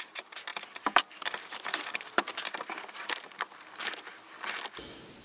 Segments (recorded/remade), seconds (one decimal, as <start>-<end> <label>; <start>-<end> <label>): 0.0-0.5 recorded; 0.5-1.9 remade; 1.9-5.2 recorded